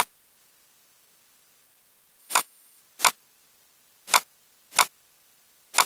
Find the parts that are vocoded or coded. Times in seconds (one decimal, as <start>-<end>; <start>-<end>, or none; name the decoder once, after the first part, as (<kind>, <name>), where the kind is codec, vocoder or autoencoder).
2.2-2.8 (autoencoder, DAC-VAE)